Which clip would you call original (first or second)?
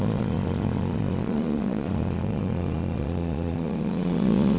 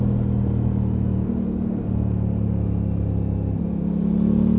second